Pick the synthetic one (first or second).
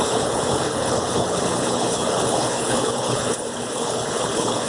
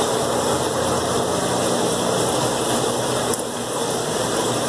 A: first